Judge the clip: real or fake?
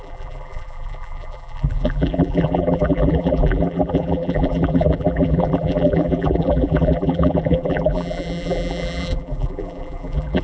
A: fake